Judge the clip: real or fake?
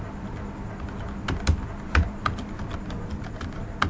real